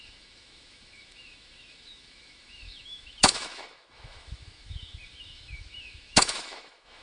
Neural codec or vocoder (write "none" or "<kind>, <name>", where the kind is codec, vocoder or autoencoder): autoencoder, DAC-VAE